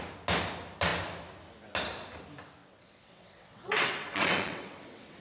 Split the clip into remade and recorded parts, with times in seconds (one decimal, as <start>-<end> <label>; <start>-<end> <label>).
0.0-2.6 recorded; 2.6-5.2 remade